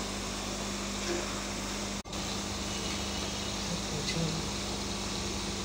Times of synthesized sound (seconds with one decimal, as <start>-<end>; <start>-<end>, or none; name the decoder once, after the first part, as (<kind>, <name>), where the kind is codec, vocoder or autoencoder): none